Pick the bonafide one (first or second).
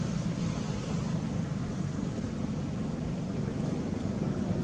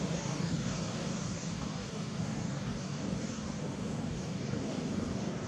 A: first